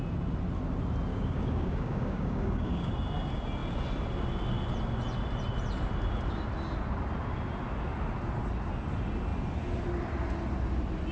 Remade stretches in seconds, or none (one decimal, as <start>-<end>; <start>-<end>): 1.1-2.9